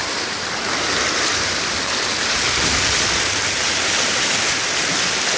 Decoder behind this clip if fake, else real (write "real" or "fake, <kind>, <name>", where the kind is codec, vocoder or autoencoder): real